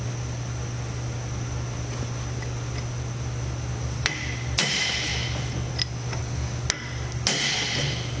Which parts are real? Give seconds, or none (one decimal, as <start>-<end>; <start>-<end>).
0.0-8.2